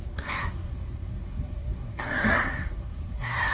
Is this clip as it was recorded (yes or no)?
no